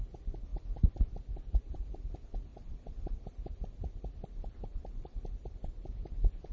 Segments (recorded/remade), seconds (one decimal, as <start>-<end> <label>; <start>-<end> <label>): 0.0-2.5 recorded; 2.5-3.5 remade; 3.5-4.7 recorded; 4.7-6.1 remade; 6.1-6.5 recorded